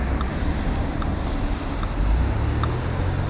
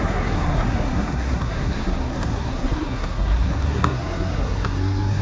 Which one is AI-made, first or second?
second